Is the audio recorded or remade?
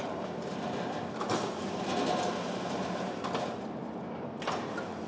remade